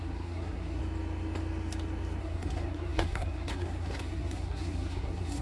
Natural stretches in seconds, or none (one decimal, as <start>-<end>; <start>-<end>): 0.8-2.2